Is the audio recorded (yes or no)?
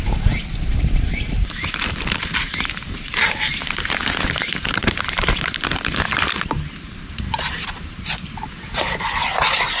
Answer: no